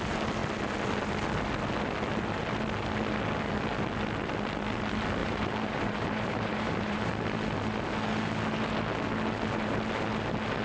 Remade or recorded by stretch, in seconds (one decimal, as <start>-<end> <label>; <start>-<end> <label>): 0.0-5.2 recorded; 5.2-7.1 remade; 7.1-10.6 recorded